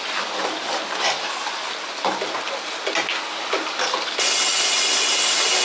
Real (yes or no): yes